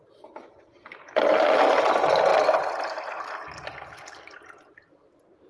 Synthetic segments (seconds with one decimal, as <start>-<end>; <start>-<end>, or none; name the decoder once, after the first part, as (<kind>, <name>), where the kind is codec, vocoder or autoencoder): none